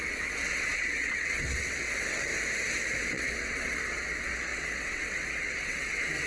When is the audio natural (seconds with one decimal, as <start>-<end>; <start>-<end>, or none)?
2.3-3.1